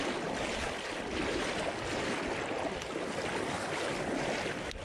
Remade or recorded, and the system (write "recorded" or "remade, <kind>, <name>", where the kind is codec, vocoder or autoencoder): recorded